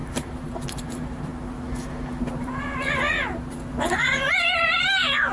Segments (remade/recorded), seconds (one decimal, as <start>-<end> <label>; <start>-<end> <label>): 0.0-1.3 remade; 1.3-2.2 recorded; 2.2-5.3 remade